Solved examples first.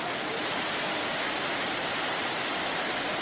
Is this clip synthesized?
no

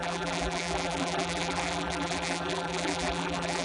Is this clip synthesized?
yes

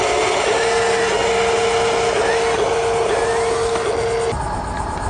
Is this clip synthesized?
no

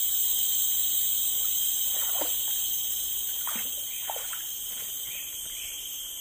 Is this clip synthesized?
yes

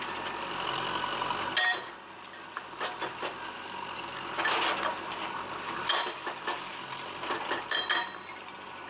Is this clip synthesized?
no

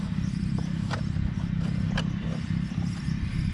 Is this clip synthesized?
yes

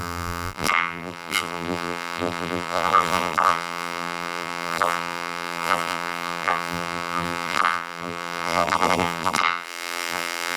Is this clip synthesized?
yes